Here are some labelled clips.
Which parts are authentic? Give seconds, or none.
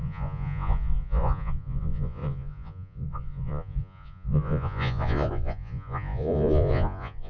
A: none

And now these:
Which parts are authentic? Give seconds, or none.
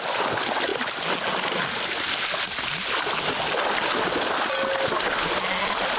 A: 0.0-6.0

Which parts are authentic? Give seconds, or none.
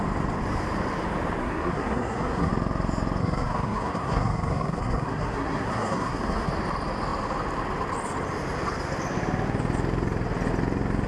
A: 0.0-1.4; 2.5-3.2; 6.5-11.1